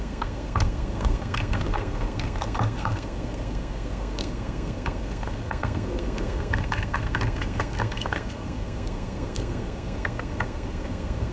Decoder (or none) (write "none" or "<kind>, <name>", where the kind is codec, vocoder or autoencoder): codec, SNAC